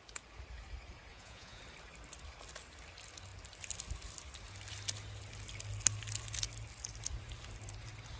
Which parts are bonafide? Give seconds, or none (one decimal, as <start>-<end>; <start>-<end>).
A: 0.0-1.1; 1.6-8.2